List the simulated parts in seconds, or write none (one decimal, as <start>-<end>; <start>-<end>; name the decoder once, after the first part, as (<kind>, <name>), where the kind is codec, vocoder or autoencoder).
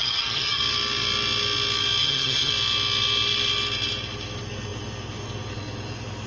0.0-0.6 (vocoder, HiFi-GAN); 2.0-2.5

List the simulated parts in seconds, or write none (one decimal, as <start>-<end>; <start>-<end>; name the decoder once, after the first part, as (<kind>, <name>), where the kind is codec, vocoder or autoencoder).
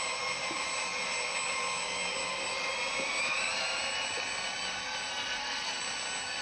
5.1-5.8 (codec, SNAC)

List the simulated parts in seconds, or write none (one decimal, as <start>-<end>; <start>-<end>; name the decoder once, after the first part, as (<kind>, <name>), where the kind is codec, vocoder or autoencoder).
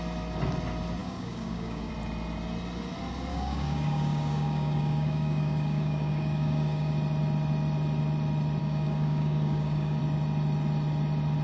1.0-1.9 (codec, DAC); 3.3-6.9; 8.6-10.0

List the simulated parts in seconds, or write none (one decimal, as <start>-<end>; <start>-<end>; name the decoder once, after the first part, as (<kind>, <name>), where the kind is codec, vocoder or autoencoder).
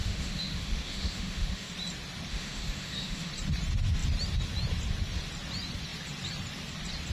0.0-1.7 (autoencoder, DAC-VAE); 2.3-3.3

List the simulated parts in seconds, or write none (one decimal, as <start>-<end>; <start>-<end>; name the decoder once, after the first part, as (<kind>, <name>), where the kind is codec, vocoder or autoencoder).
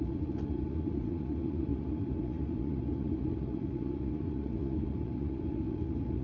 0.0-6.2 (vocoder, Vocos)